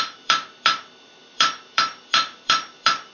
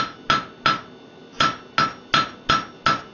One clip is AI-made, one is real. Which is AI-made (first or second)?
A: first